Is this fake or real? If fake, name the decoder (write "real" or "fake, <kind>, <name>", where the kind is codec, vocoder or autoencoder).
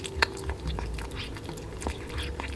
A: real